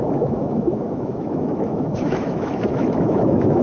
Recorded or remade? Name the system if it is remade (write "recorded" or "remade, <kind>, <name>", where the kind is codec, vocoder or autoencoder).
remade, autoencoder, DAC-VAE